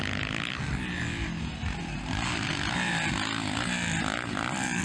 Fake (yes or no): no